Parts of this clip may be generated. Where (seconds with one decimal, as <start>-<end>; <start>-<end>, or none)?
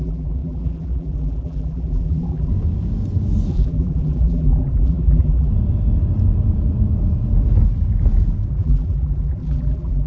0.0-2.5; 3.5-5.5; 8.5-10.1